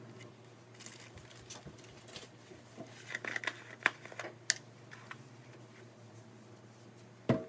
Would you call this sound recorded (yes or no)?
yes